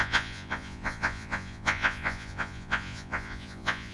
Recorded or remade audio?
remade